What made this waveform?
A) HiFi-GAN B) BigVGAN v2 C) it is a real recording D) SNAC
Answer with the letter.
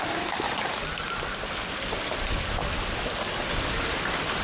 B